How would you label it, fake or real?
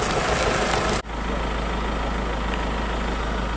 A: real